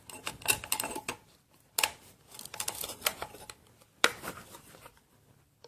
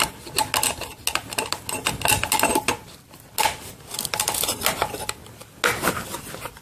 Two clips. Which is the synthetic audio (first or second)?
first